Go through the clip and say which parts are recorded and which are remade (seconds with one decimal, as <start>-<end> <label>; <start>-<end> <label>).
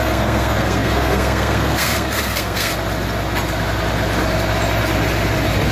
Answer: 0.0-2.7 remade; 2.7-5.7 recorded